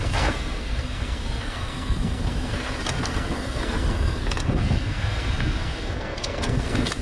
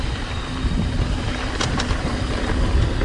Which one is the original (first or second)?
second